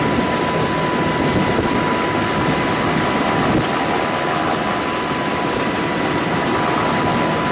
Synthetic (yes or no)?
no